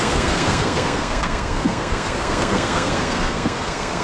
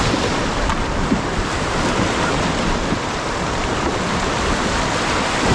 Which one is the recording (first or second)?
second